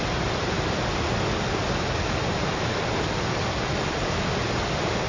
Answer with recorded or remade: recorded